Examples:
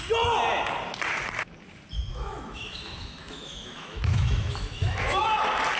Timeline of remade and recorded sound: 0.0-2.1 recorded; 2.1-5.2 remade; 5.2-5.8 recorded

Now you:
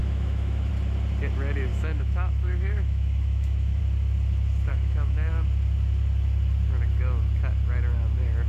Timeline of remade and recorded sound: 0.0-0.7 remade; 0.7-1.7 recorded; 1.7-3.8 remade; 3.8-4.7 recorded; 4.7-5.3 remade; 5.3-8.5 recorded